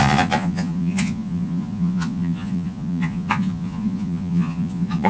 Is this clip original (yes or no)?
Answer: no